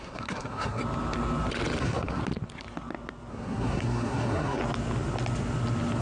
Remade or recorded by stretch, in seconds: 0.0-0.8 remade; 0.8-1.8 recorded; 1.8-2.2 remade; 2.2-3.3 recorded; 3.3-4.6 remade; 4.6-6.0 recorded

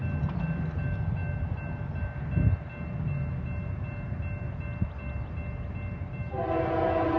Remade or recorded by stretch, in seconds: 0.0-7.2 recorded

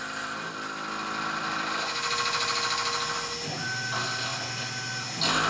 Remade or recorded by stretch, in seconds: 0.0-5.5 recorded